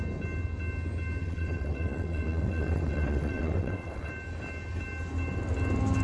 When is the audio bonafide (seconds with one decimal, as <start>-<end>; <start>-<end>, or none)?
0.0-1.2; 4.1-6.0